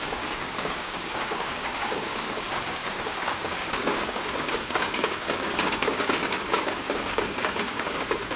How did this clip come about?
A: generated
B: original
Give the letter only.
A